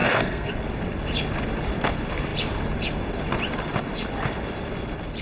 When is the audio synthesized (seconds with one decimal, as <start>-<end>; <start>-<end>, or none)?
0.0-0.5